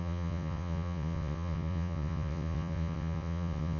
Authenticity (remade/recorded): remade